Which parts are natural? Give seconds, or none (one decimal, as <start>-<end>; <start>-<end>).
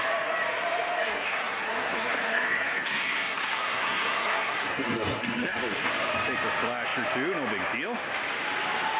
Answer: 0.0-1.0; 5.9-9.0